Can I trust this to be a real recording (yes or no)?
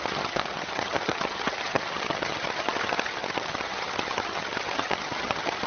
no